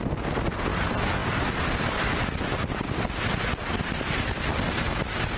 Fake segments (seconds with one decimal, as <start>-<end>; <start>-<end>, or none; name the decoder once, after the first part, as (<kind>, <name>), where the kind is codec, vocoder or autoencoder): none